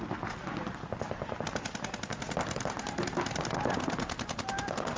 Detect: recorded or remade recorded